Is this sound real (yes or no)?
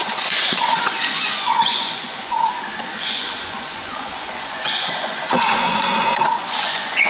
no